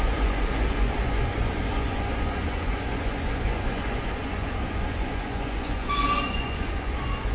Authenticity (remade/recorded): remade